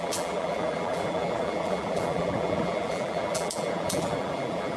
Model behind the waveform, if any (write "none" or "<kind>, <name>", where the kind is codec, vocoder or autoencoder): vocoder, BigVGAN v2